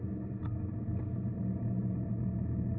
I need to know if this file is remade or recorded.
recorded